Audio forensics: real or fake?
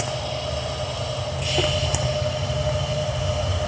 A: real